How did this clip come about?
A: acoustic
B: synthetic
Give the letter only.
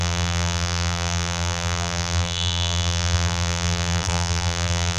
B